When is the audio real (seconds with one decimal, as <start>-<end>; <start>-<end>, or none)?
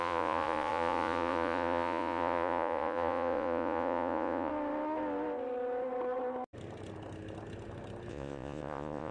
4.5-8.1